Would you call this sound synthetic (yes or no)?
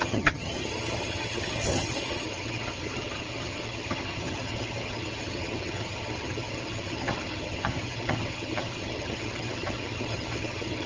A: yes